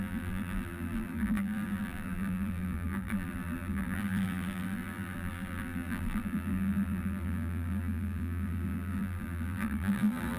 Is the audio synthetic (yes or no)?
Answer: yes